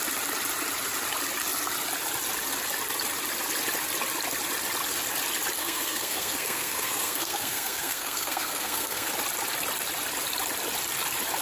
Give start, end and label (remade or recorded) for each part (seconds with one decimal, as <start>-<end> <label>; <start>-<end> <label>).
0.0-5.6 recorded; 5.6-9.1 remade; 9.1-11.4 recorded